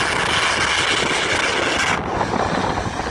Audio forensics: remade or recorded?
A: recorded